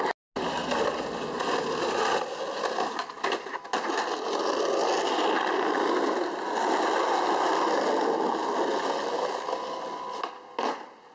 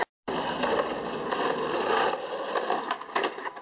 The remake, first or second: second